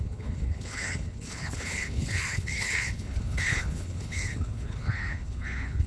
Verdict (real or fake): fake